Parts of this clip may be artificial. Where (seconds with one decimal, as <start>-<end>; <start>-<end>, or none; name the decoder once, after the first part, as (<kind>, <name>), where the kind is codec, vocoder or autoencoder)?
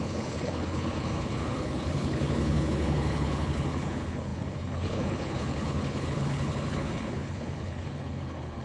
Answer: 0.0-8.6 (codec, HILCodec)